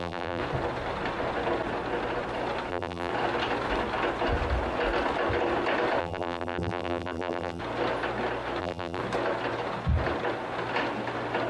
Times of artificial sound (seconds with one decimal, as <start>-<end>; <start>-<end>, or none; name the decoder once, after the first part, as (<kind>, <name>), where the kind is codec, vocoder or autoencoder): 0.0-0.4 (vocoder, BigVGAN v2); 2.7-3.1; 6.0-7.6; 8.6-9.0